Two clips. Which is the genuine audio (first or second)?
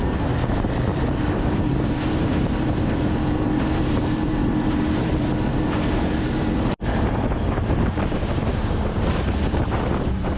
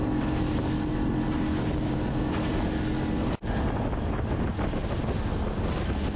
second